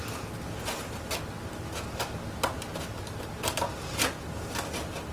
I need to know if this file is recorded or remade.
recorded